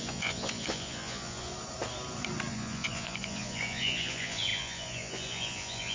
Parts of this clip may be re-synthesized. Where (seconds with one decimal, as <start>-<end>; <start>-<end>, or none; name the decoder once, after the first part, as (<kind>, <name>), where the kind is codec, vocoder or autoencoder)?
0.0-1.5 (vocoder, Vocos); 2.5-5.9